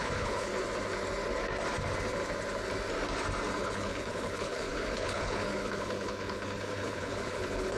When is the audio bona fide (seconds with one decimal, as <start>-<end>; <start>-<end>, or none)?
0.5-3.6